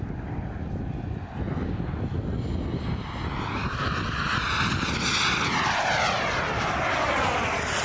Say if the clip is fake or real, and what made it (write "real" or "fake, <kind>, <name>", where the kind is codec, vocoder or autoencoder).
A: real